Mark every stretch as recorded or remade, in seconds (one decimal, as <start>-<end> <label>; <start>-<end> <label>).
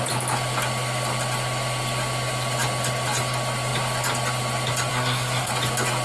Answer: 0.0-4.9 recorded; 4.9-5.5 remade; 5.5-6.0 recorded